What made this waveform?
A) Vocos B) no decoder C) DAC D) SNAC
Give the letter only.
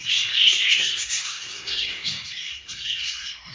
D